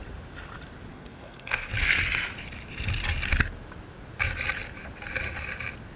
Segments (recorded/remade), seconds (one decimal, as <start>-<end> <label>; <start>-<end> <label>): 0.0-0.9 recorded; 0.9-1.7 remade; 1.7-6.0 recorded